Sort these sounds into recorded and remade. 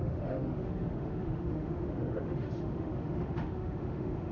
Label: remade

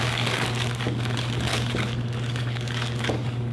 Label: remade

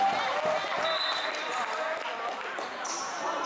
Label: recorded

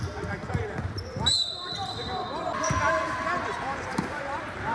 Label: recorded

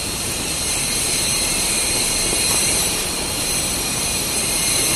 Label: remade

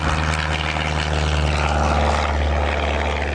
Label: recorded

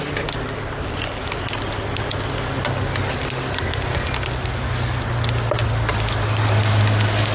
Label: recorded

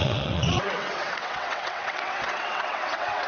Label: remade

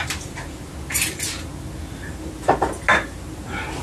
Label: recorded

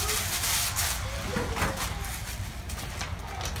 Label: recorded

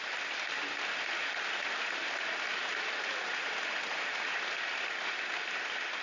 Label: recorded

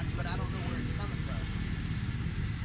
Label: recorded